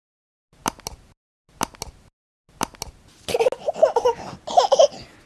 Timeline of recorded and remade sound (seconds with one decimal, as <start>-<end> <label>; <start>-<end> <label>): 0.0-5.3 recorded